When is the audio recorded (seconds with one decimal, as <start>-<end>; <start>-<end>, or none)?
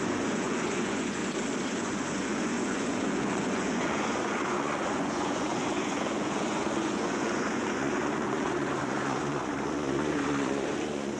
1.2-1.7